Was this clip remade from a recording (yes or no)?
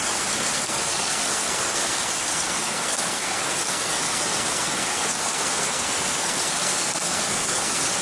yes